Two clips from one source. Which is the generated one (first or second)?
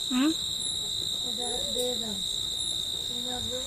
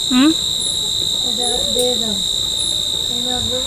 first